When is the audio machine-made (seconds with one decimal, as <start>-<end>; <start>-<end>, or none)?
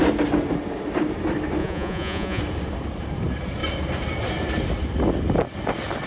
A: 1.6-2.4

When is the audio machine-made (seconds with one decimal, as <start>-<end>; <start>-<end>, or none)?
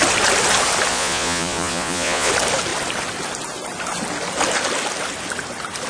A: 0.9-2.3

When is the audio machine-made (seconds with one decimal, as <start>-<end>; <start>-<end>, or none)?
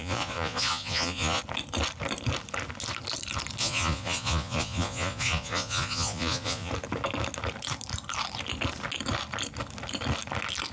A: 0.0-1.4; 3.6-6.7